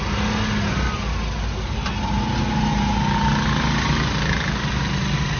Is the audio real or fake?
real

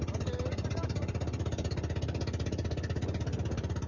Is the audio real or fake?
real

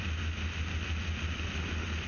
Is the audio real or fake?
real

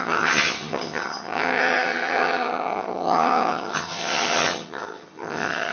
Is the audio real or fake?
fake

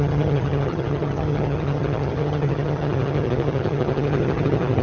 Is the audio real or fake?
fake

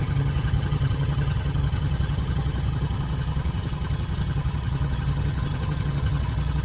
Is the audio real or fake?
fake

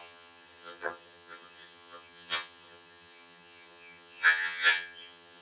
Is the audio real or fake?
fake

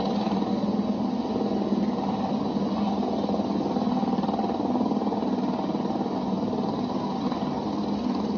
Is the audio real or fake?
real